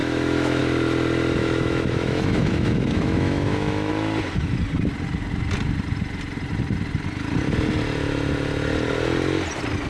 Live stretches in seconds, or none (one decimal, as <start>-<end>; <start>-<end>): 0.6-1.4; 3.9-9.9

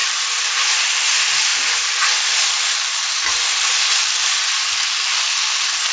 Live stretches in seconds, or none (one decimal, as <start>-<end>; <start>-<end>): 0.0-5.9